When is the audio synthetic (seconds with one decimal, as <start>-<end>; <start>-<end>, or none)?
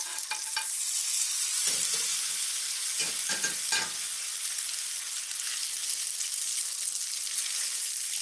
none